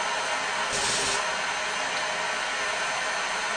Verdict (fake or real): real